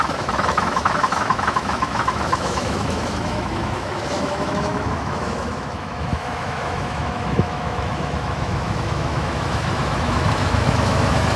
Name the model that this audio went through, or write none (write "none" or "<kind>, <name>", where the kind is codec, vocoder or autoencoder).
autoencoder, DAC-VAE